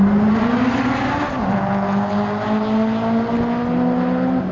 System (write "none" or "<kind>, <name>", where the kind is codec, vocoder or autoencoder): none